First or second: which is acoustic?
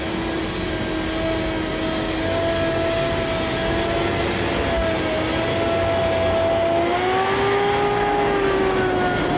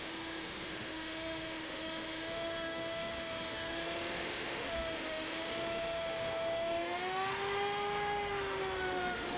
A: first